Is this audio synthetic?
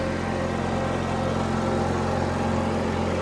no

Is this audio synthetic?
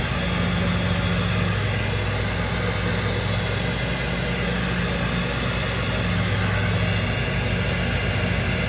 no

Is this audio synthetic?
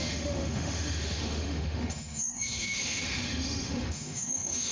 yes